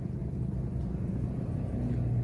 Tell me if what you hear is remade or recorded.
recorded